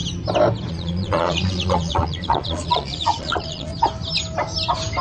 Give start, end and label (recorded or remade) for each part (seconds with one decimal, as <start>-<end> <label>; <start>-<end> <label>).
0.0-0.7 recorded; 0.7-3.7 remade; 3.7-5.0 recorded